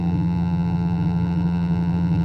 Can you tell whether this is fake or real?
fake